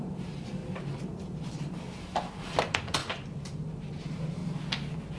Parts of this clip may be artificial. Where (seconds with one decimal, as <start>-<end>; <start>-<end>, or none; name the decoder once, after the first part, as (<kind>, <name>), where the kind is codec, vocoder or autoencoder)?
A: 0.0-0.6 (vocoder, BigVGAN v2); 1.4-4.4